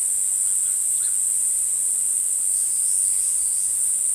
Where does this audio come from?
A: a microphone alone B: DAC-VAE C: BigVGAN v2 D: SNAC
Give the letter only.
A